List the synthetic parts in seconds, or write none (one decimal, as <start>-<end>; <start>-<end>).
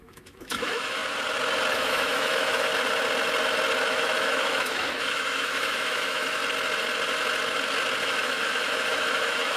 0.0-1.0; 1.7-2.7; 3.9-6.4; 8.0-9.6